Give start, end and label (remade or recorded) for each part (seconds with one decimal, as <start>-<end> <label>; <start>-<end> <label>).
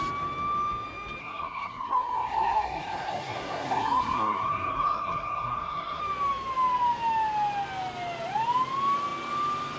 0.0-1.2 recorded; 1.2-6.0 remade; 6.0-9.8 recorded